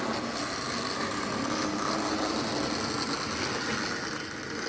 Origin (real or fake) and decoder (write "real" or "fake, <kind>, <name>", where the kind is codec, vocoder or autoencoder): real